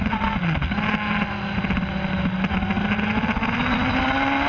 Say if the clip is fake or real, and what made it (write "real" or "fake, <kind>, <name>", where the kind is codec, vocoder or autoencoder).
real